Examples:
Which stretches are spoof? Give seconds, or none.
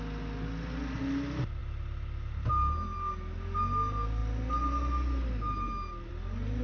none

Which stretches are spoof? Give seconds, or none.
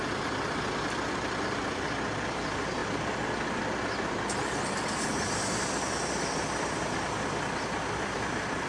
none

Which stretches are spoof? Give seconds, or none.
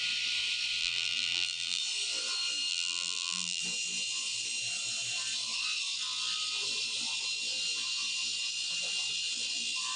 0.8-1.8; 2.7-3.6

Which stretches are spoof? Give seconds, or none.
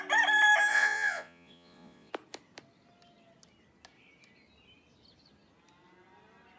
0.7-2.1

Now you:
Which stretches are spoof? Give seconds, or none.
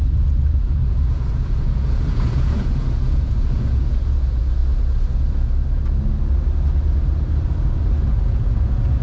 0.0-4.6; 8.2-9.0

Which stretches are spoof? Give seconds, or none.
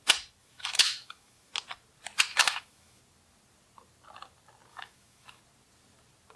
0.4-1.5; 2.3-3.0; 4.7-5.4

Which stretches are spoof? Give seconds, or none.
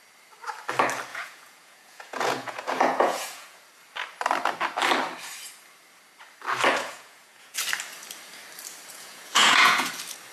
1.1-3.6; 6.7-7.6; 8.9-9.9